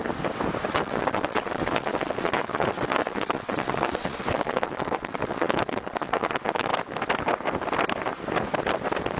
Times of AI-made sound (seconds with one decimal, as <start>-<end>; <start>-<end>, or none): 0.7-6.7